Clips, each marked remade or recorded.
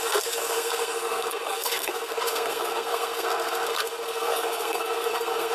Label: remade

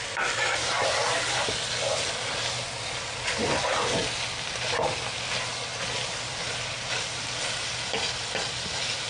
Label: recorded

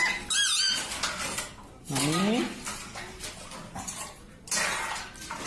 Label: recorded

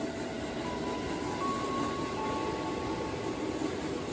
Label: recorded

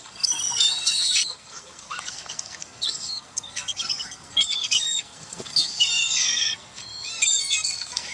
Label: remade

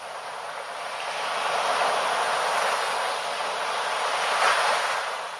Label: recorded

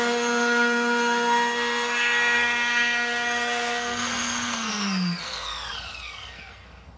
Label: remade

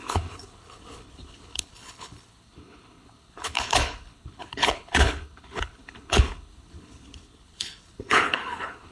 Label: remade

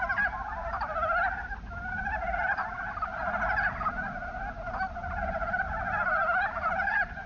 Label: recorded